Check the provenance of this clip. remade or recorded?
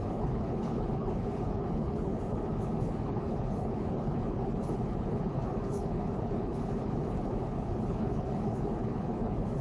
remade